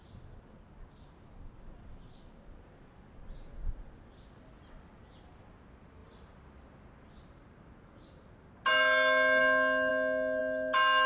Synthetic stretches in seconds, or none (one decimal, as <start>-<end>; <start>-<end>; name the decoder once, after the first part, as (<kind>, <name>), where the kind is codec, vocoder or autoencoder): none